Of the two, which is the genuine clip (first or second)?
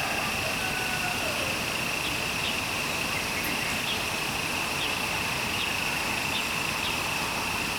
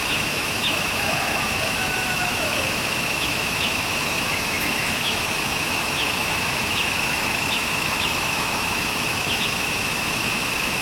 first